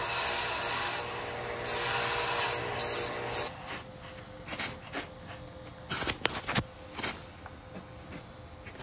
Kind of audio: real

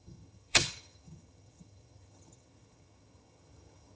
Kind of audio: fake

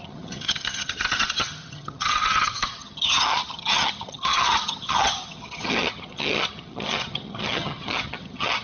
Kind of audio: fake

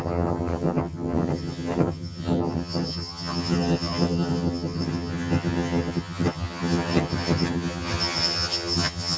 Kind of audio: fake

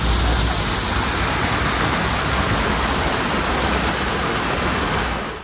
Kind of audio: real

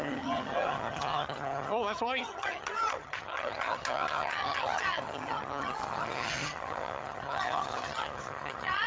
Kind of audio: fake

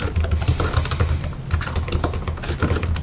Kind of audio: real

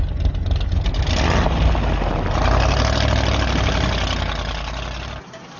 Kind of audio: real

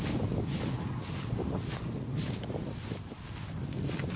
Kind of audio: real